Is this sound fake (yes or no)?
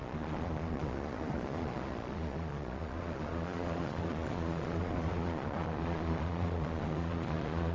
yes